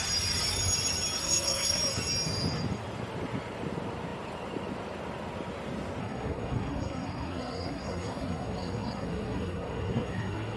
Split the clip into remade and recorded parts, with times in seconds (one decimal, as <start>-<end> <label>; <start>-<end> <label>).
0.0-1.2 recorded; 1.2-1.8 remade; 1.8-6.0 recorded; 6.0-10.6 remade